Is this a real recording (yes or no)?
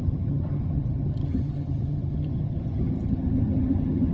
no